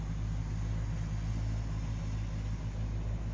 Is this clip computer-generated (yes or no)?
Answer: no